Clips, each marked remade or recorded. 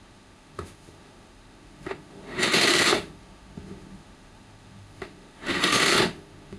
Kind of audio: remade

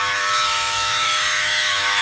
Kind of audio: remade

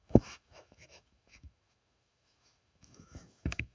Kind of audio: remade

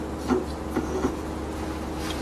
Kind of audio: recorded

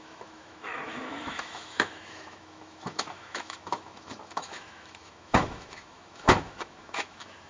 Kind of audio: remade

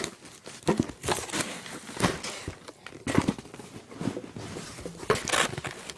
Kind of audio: recorded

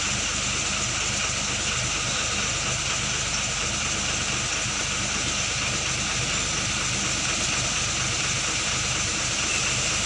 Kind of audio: recorded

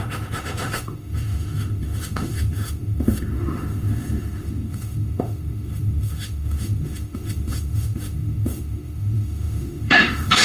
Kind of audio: remade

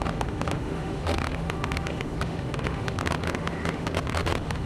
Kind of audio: remade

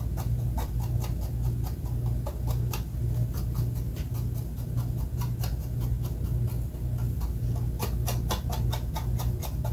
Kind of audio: recorded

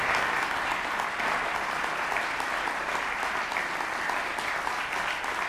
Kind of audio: recorded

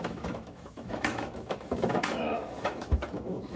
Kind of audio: remade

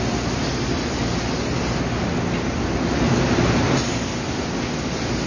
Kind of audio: recorded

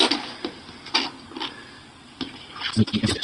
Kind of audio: recorded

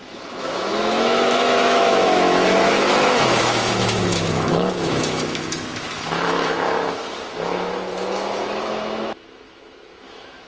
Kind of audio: remade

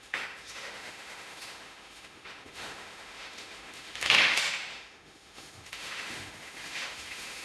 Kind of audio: remade